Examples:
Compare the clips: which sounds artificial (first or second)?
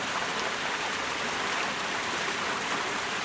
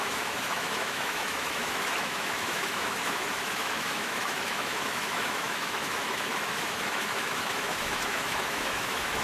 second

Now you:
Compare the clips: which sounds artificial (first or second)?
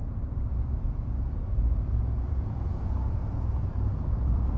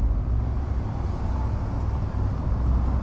first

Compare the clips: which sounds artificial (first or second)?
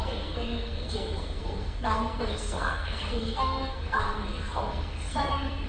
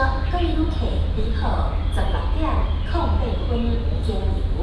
first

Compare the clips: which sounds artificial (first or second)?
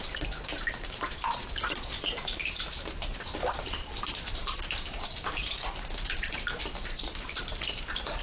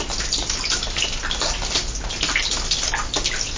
first